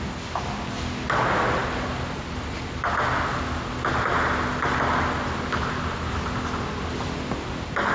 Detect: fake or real real